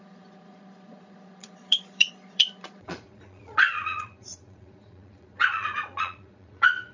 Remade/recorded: remade